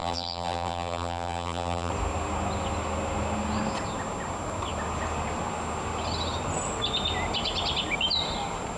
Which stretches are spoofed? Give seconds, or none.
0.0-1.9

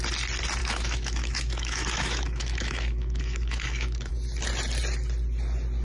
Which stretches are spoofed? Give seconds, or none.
0.6-4.1